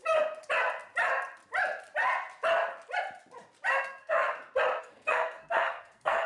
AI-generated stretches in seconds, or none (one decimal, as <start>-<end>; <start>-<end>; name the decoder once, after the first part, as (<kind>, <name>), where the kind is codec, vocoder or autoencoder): 3.8-4.3 (codec, SNAC); 4.8-6.3